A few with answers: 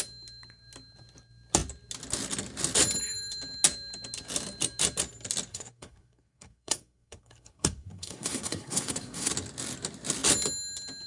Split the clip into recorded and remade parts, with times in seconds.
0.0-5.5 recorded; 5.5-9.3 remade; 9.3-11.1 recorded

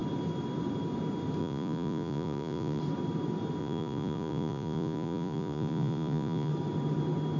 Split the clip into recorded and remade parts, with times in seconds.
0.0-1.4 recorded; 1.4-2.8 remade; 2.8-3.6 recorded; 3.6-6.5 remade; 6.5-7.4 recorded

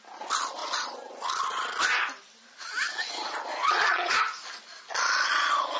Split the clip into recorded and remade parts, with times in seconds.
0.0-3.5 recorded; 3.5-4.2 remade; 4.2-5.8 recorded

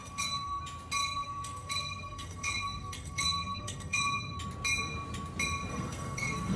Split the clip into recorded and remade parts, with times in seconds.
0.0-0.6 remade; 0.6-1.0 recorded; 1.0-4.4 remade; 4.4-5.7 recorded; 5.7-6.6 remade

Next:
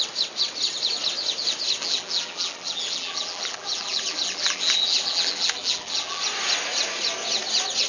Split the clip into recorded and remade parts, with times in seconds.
0.0-1.8 recorded; 1.8-6.2 remade; 6.2-7.9 recorded